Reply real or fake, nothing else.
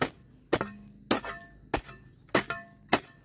real